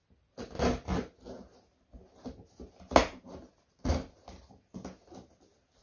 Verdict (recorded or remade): recorded